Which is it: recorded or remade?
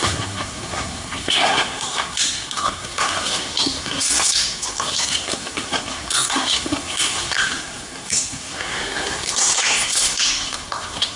remade